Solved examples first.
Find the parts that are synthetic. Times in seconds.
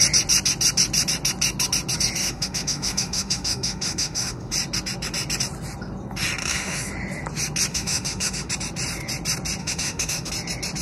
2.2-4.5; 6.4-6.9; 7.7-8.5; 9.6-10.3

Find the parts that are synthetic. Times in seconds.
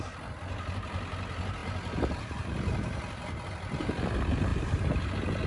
4.5-5.1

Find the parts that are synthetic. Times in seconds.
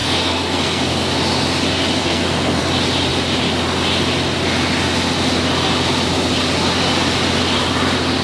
0.0-0.9; 2.0-2.6